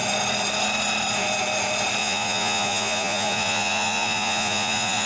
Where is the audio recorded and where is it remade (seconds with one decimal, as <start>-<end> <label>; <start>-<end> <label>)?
0.0-2.0 recorded; 2.0-5.1 remade

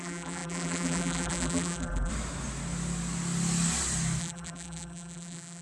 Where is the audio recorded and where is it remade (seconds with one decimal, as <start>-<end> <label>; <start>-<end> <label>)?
0.0-2.1 remade; 2.1-4.2 recorded; 4.2-5.6 remade

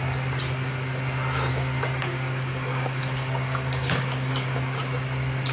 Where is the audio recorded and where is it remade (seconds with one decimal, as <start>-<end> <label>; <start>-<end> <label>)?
0.0-1.5 recorded; 1.5-4.8 remade; 4.8-5.5 recorded